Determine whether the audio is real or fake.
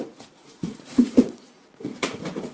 fake